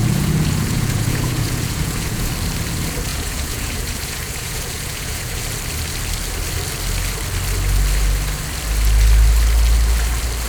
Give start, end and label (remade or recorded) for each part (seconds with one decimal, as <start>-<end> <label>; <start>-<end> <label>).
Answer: 0.0-2.3 remade; 2.3-3.1 recorded; 3.1-5.4 remade; 5.4-10.5 recorded